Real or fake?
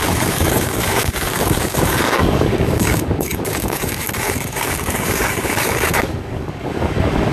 fake